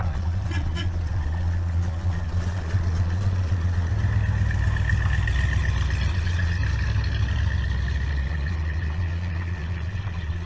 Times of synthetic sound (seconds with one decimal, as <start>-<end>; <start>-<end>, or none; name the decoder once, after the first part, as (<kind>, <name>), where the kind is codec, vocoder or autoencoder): 0.0-3.9 (vocoder, Vocos); 6.1-6.6; 8.1-10.5